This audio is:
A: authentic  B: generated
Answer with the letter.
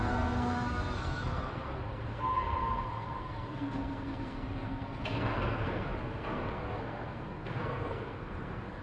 B